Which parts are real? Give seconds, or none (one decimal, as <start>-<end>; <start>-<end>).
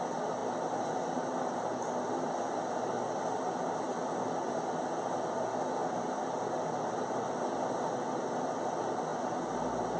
0.0-5.8; 7.2-10.0